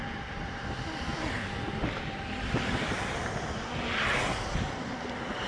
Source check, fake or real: real